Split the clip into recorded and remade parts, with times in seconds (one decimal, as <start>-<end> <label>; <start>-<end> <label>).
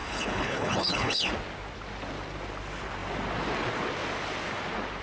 0.0-1.3 remade; 1.3-5.0 recorded